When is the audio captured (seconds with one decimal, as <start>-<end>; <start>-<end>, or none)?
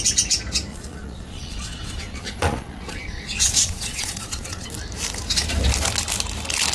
0.0-0.7; 4.7-6.7